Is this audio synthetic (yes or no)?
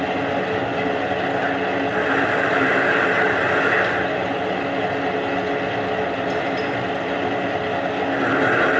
no